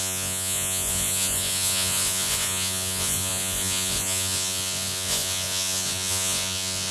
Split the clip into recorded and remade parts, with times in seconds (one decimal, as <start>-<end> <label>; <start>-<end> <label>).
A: 0.0-6.9 remade